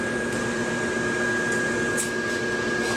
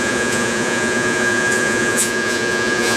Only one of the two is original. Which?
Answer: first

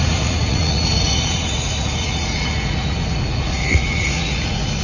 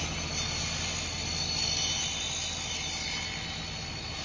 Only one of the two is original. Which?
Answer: second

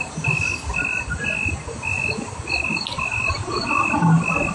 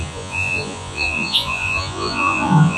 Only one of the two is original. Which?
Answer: first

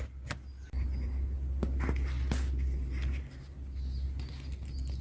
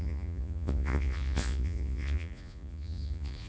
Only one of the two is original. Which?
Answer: first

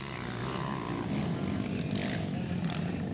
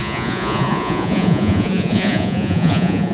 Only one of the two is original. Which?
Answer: first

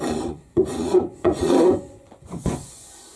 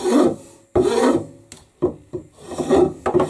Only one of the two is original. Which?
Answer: second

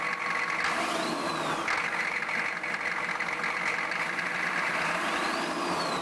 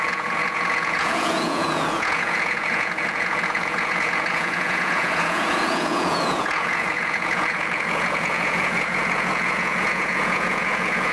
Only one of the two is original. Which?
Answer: first